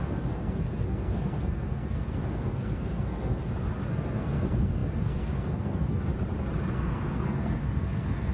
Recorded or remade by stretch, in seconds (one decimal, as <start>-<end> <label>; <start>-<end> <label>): 0.0-3.4 remade; 3.4-3.9 recorded; 3.9-6.2 remade; 6.2-6.7 recorded; 6.7-8.3 remade